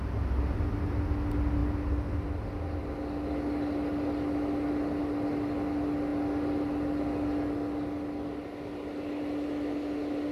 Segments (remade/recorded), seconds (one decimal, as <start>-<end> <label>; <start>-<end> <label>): 0.0-10.3 recorded